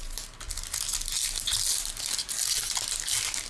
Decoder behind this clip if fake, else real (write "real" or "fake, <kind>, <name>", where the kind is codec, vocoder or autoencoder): real